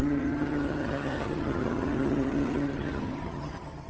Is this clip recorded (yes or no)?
no